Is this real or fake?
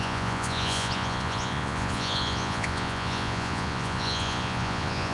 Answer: fake